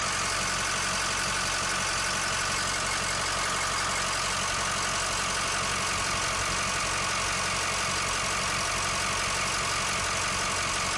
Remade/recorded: recorded